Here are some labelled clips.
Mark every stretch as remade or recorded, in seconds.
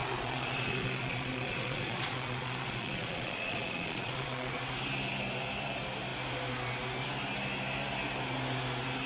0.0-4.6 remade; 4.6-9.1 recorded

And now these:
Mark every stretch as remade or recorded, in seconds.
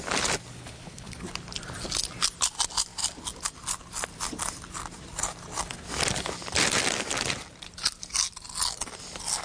0.0-0.5 recorded; 0.5-1.3 remade; 1.3-9.4 recorded